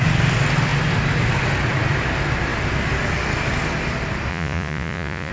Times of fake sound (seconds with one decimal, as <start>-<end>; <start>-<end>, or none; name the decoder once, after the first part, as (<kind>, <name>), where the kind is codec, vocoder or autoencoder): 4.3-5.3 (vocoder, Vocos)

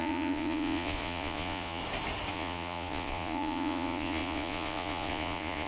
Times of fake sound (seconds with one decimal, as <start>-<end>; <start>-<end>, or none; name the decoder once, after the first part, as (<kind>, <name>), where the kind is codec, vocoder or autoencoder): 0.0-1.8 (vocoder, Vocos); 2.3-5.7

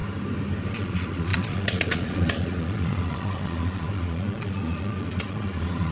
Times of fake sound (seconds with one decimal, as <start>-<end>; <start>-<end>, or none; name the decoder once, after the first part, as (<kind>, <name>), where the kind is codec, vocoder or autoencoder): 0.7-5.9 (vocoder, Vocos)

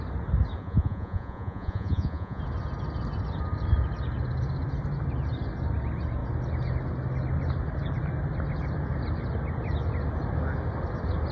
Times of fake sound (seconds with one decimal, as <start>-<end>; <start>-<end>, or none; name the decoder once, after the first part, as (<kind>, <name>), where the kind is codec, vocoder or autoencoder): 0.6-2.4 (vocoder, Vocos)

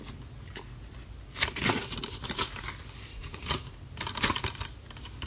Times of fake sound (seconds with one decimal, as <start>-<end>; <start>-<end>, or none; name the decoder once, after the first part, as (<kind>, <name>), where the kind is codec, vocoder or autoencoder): 3.1-3.7 (vocoder, Vocos)

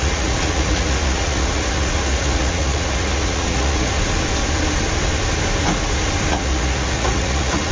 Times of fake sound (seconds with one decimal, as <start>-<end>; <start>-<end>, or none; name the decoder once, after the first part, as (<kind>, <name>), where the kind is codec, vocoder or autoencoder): 0.0-3.9 (vocoder, Vocos); 6.3-7.7

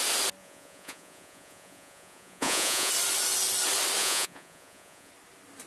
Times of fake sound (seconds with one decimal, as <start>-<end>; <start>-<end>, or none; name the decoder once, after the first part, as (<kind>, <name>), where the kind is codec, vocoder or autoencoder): 0.4-2.9 (vocoder, Vocos); 4.0-5.1

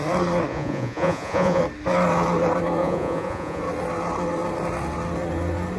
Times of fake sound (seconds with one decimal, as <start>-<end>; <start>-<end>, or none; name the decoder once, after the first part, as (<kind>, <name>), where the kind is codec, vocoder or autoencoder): 0.5-1.6 (vocoder, Vocos); 2.8-3.6